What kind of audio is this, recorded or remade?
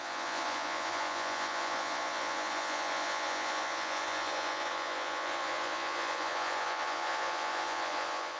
remade